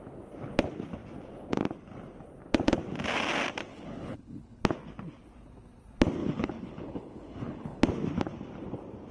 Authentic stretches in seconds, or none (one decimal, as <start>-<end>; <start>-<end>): 0.0-3.7; 4.6-6.2; 7.8-9.1